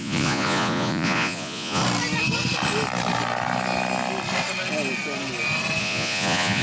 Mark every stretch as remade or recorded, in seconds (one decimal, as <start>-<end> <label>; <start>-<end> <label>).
0.0-1.8 remade; 1.8-5.8 recorded; 5.8-6.6 remade